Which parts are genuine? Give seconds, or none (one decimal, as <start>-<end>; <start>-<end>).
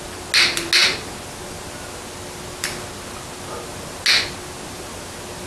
0.0-5.5